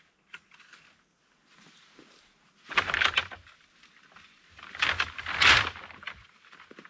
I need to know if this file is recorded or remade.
recorded